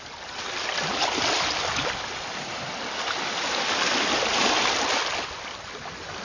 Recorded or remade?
recorded